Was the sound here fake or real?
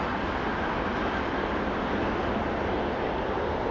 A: real